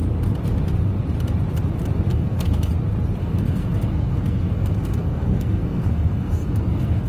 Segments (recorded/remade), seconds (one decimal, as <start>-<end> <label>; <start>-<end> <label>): 0.0-2.1 recorded; 2.1-2.7 remade; 2.7-3.2 recorded; 3.2-7.1 remade